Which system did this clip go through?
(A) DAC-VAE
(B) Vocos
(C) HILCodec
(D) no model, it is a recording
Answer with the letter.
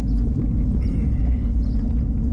D